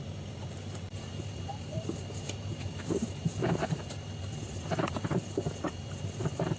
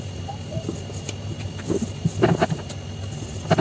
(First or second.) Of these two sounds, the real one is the second